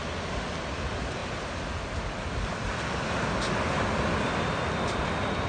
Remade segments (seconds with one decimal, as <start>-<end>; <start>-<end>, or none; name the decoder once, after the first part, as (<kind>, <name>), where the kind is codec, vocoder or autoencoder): none